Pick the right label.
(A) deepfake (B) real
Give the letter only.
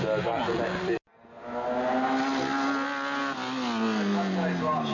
B